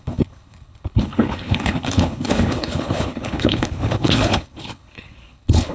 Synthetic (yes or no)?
yes